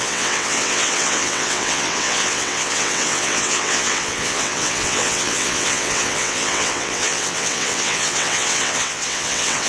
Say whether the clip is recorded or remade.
remade